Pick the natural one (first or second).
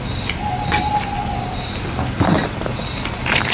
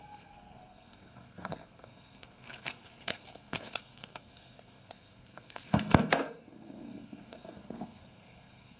first